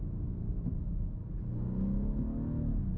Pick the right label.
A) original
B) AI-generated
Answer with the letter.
A